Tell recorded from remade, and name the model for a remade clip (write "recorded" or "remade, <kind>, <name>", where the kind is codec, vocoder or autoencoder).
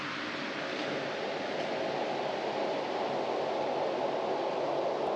recorded